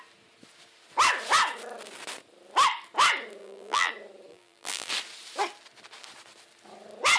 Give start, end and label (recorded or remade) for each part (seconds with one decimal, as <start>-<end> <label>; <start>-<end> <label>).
0.0-3.4 recorded; 3.4-3.9 remade; 3.9-4.3 recorded; 4.3-4.9 remade; 4.9-7.2 recorded